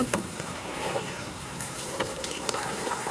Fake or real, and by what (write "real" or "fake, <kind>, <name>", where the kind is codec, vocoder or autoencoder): fake, codec, SNAC